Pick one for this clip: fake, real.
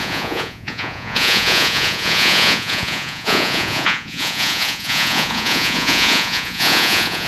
fake